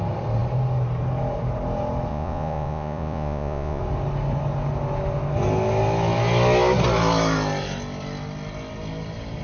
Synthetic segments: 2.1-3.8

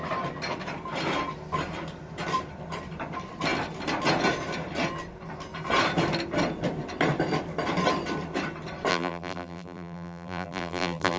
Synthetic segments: 8.9-11.2